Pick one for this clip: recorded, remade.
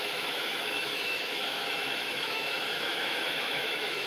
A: remade